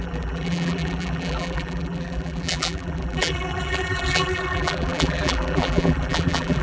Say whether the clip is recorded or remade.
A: remade